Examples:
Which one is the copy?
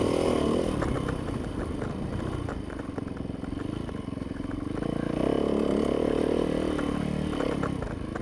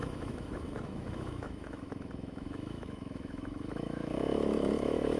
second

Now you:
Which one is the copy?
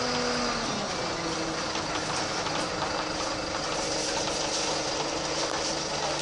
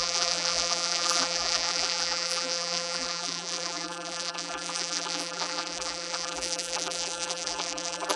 second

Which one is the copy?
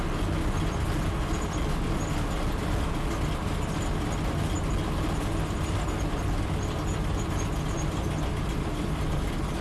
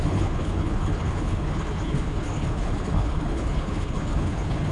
second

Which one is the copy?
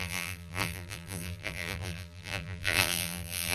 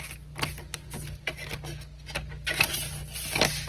first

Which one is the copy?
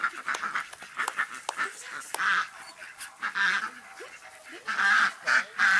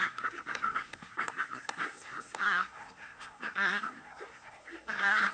second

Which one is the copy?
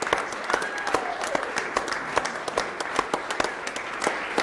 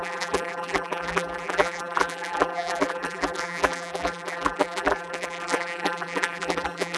second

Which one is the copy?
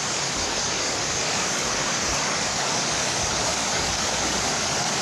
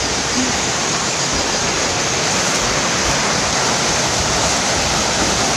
first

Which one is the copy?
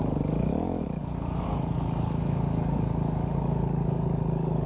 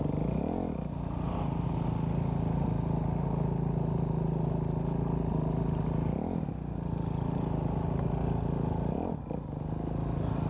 first